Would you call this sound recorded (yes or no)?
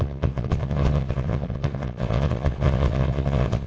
no